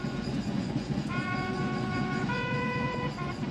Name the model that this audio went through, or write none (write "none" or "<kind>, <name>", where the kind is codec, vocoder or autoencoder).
vocoder, Vocos